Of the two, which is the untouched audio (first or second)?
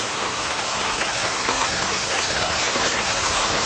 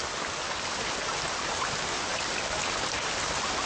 second